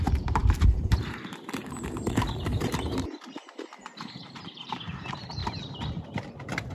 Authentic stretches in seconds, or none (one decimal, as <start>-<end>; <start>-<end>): 5.4-6.7